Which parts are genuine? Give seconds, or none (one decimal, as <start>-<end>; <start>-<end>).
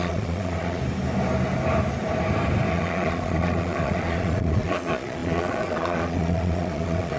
0.8-2.7